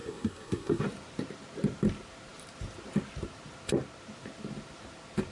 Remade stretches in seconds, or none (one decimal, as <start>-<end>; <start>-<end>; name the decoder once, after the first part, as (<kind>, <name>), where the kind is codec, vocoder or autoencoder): 0.0-0.8 (codec, SNAC)